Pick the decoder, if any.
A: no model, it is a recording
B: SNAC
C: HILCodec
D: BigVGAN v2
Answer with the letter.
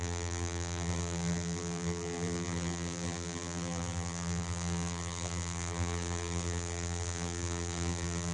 D